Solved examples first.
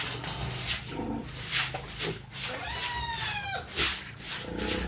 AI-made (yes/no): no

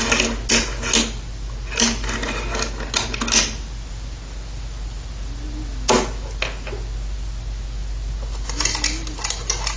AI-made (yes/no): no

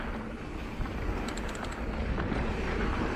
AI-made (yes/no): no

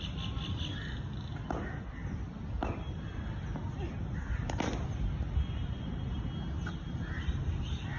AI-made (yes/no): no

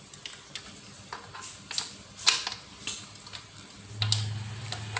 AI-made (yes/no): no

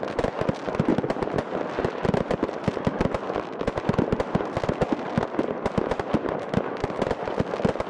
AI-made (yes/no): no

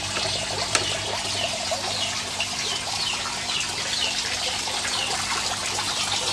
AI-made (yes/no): no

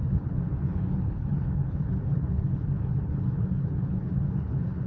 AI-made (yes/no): yes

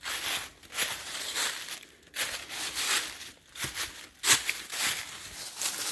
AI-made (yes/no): no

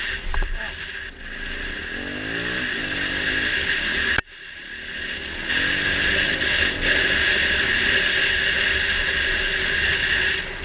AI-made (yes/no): no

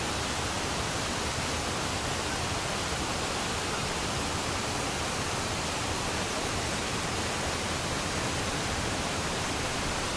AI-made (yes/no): no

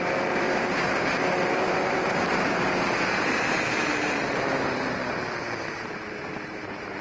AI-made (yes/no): yes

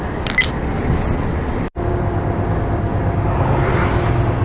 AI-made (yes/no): no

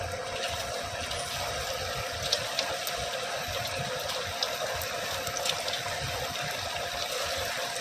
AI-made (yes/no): no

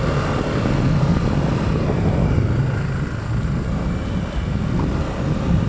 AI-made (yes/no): no